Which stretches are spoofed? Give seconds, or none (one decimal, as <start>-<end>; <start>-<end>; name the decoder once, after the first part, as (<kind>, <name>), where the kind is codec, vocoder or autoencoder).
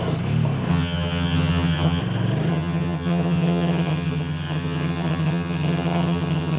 0.7-2.0 (vocoder, HiFi-GAN); 2.5-6.6